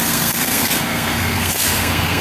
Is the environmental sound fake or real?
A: fake